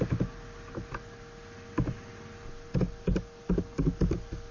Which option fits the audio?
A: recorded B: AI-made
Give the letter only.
A